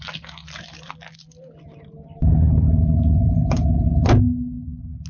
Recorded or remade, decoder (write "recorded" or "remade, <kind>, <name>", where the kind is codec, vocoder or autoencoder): recorded